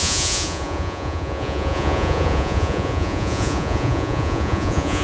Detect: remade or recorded remade